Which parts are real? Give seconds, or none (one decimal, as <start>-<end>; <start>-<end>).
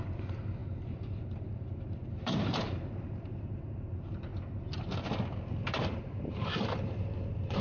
4.3-5.5